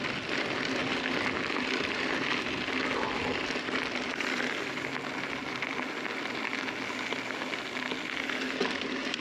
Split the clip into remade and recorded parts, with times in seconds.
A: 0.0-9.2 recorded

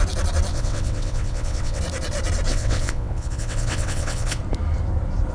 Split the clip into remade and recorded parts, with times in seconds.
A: 0.0-0.5 recorded; 0.5-1.8 remade; 1.8-2.5 recorded; 2.5-4.4 remade; 4.4-5.3 recorded

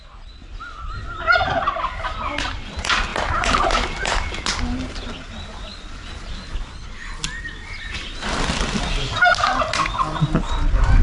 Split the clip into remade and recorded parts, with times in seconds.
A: 0.0-11.0 recorded

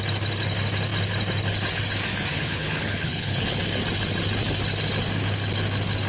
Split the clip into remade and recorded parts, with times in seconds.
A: 0.0-2.3 recorded; 2.3-3.6 remade; 3.6-6.1 recorded

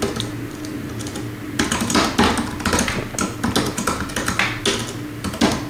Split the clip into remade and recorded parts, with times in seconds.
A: 0.0-5.7 recorded